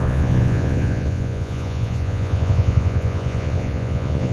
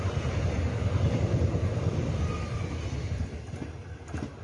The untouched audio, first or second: second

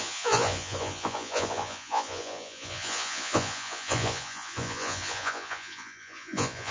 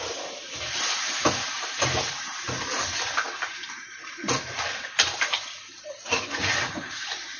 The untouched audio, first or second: second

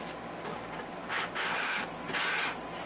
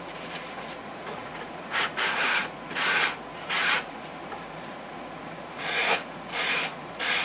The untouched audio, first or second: first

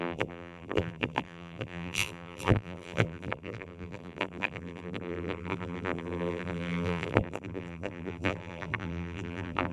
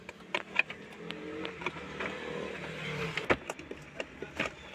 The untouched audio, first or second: second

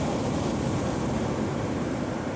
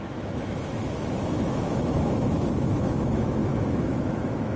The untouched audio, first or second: first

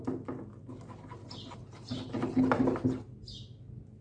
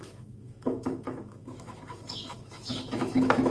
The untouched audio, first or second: first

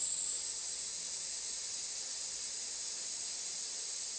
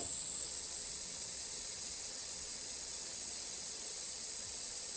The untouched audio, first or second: first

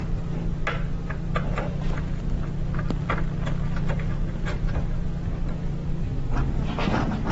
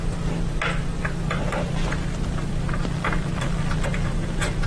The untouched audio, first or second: first